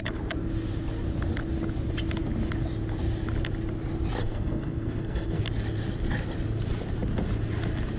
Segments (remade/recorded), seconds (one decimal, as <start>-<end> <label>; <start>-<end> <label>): 0.0-4.2 recorded; 4.2-5.4 remade; 5.4-8.0 recorded